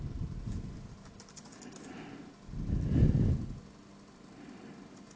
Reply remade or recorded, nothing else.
recorded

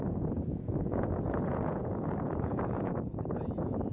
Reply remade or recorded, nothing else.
remade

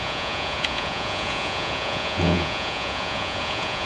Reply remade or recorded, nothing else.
remade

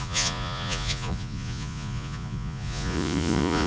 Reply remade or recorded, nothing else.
remade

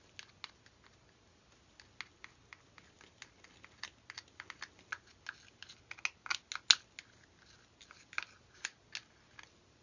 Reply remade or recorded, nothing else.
recorded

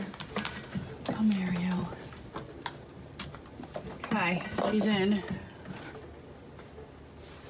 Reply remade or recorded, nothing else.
recorded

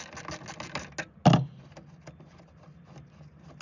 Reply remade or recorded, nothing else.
recorded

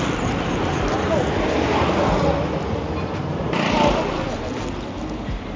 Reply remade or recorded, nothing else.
recorded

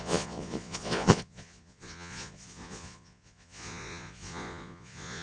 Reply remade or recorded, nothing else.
remade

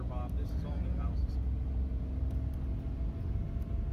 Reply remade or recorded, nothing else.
recorded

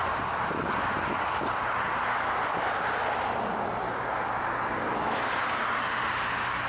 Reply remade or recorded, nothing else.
recorded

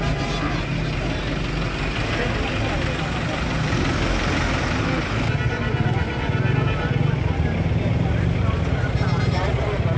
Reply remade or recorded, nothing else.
recorded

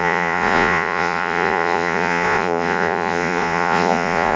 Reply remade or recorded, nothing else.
remade